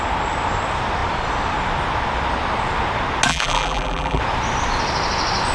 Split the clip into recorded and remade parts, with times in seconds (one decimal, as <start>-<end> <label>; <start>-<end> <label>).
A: 0.0-3.3 recorded; 3.3-4.2 remade; 4.2-5.5 recorded

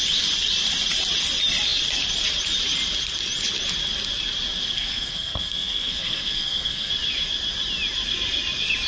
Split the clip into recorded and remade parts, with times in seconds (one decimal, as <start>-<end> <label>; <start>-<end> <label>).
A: 0.0-4.6 recorded; 4.6-6.9 remade; 6.9-8.9 recorded

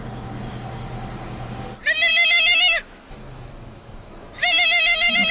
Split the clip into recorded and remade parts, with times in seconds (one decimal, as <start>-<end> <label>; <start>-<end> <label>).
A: 0.0-2.1 recorded; 2.1-5.3 remade

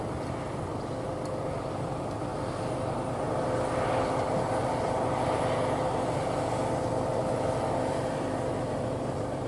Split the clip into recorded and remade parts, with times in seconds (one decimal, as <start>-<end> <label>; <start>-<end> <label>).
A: 0.0-2.3 remade; 2.3-6.8 recorded; 6.8-9.5 remade

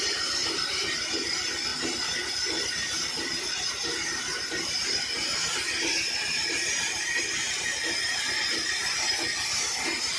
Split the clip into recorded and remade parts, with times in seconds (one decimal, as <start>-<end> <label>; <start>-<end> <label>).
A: 0.0-10.2 recorded

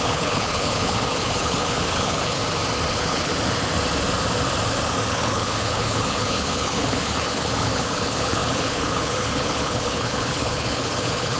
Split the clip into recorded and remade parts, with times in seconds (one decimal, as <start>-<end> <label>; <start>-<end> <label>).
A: 0.0-2.4 remade; 2.4-2.9 recorded; 2.9-3.3 remade; 3.3-5.1 recorded; 5.1-11.4 remade